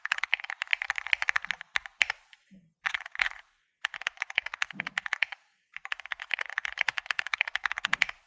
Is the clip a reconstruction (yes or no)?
no